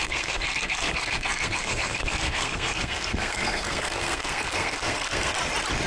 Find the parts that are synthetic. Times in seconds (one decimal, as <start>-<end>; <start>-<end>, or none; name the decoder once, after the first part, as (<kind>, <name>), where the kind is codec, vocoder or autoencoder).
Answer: 0.0-5.3 (codec, SNAC)